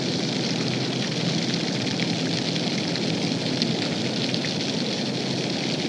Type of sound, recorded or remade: recorded